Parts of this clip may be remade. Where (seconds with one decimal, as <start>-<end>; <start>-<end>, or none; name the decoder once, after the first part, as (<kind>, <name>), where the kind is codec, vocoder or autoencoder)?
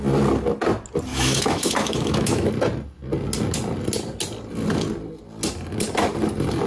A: 1.1-2.5 (autoencoder, DAC-VAE)